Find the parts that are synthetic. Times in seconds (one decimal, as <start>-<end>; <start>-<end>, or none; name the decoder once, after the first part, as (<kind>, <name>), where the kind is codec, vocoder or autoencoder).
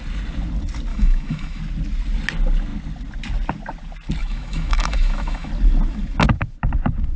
0.9-1.6 (autoencoder, DAC-VAE); 4.2-5.5